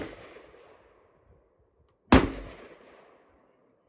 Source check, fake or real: real